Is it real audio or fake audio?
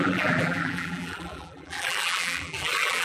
fake